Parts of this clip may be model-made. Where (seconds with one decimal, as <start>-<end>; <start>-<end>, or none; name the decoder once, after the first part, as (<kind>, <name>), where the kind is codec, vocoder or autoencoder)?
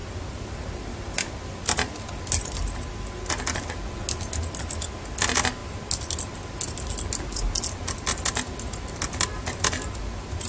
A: none